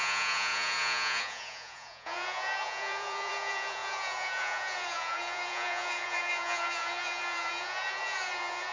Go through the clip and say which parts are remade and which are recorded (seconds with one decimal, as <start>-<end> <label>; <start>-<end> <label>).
0.0-8.7 remade

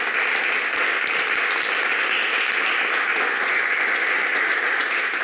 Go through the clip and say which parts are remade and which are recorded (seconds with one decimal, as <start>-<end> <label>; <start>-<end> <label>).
0.0-3.1 recorded; 3.1-4.4 remade; 4.4-5.2 recorded

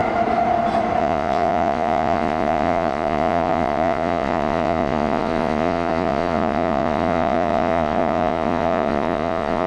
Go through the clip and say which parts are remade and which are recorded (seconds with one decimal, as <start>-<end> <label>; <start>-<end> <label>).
0.0-1.0 recorded; 1.0-9.7 remade

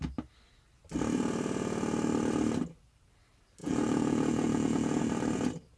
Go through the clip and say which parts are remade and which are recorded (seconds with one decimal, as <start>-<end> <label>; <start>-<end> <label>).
0.0-3.6 recorded; 3.6-5.0 remade; 5.0-5.8 recorded

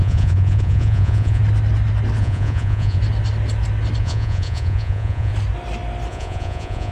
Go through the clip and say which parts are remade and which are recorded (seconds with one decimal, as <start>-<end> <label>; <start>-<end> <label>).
0.0-1.4 remade; 1.4-2.2 recorded; 2.2-3.0 remade; 3.0-4.0 recorded; 4.0-5.3 remade; 5.3-6.1 recorded; 6.1-6.9 remade